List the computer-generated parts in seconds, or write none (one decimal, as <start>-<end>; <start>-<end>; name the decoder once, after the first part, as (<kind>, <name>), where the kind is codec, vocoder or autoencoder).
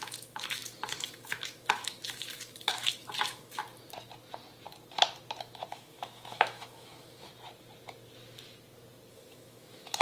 0.0-3.6 (autoencoder, DAC-VAE); 5.7-7.3; 9.1-10.0